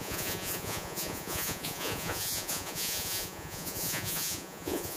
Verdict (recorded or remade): remade